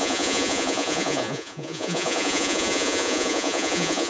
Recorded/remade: remade